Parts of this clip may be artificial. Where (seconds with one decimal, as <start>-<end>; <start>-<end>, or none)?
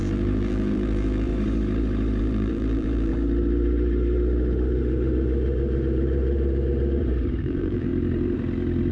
0.0-1.3; 2.2-3.1; 7.4-7.9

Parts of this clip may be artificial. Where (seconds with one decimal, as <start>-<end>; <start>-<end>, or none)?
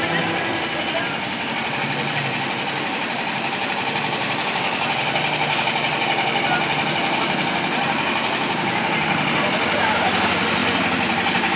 none